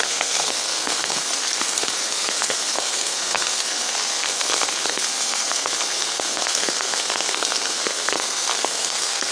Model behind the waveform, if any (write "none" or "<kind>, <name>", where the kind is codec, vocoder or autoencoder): codec, SNAC